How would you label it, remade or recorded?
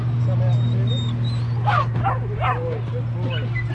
recorded